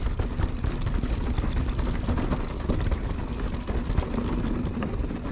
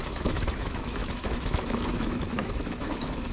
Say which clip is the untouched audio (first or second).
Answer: first